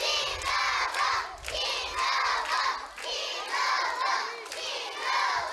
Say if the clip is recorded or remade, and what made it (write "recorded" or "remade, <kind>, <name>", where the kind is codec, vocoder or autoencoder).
recorded